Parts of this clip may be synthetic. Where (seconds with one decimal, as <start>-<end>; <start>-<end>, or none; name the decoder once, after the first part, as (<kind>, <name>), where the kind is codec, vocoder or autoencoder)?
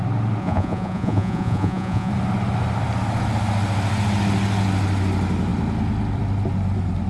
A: 0.4-2.1 (vocoder, Vocos)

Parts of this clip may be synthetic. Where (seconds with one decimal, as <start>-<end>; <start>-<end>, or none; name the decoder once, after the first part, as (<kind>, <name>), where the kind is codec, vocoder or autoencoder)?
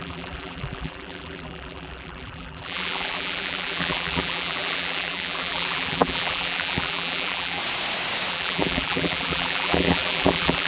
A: 0.0-7.6 (vocoder, BigVGAN v2); 8.3-10.7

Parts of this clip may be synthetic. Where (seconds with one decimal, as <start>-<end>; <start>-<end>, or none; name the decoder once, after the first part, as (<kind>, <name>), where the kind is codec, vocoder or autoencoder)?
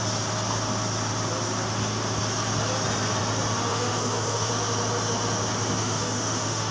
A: 3.7-4.5 (autoencoder, DAC-VAE); 5.8-6.7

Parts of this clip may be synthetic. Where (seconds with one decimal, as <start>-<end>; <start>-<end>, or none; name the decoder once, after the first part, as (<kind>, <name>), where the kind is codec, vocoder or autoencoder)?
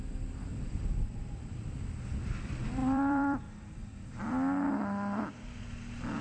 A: 0.5-1.8 (vocoder, BigVGAN v2); 2.8-4.2